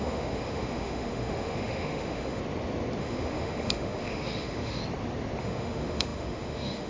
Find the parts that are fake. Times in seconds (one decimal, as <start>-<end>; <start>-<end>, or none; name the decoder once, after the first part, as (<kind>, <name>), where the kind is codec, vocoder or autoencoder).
0.0-2.4 (autoencoder, DAC-VAE); 3.0-4.8; 5.4-6.9